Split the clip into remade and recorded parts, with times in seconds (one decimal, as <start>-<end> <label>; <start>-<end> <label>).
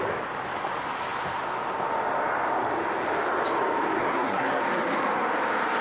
0.0-4.0 recorded; 4.0-4.6 remade; 4.6-5.8 recorded